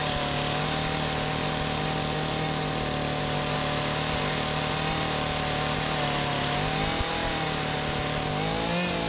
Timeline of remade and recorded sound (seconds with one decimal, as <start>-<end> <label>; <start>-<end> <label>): 0.0-9.1 recorded